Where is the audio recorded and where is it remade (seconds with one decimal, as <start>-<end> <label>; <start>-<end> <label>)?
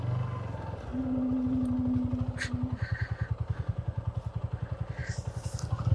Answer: 0.0-5.9 recorded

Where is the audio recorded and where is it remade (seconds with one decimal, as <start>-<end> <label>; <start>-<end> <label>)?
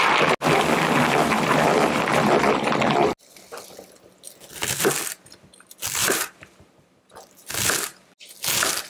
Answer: 0.0-6.0 recorded; 6.0-7.5 remade; 7.5-8.9 recorded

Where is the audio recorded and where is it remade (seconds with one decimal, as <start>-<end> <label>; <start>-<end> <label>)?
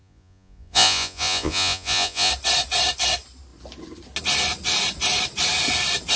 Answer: 0.0-2.3 remade; 2.3-6.2 recorded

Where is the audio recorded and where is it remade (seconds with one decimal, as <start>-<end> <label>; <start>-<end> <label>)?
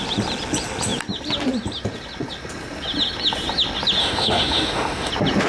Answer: 0.0-4.0 recorded; 4.0-5.1 remade; 5.1-5.5 recorded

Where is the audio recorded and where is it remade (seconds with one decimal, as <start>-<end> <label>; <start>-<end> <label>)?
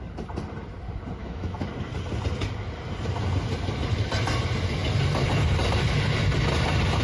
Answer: 0.0-1.2 recorded; 1.2-1.7 remade; 1.7-7.0 recorded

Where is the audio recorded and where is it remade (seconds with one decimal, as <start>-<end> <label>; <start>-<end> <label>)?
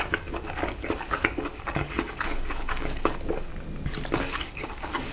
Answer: 0.0-3.5 remade; 3.5-4.2 recorded; 4.2-5.1 remade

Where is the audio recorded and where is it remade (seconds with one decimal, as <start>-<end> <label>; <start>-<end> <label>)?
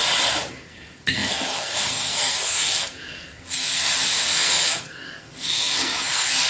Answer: 0.0-0.5 recorded; 0.5-6.5 remade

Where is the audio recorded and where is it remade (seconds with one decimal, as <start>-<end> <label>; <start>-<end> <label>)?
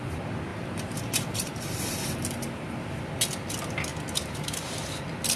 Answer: 0.0-0.5 recorded; 0.5-3.0 remade; 3.0-3.9 recorded; 3.9-4.7 remade; 4.7-5.4 recorded